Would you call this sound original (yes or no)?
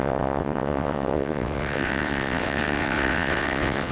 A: no